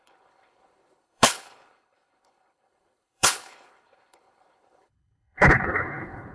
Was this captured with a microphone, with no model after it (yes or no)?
no